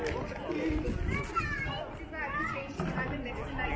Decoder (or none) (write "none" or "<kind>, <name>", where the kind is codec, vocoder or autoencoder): none